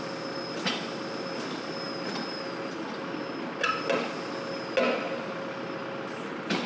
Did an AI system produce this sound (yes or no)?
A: no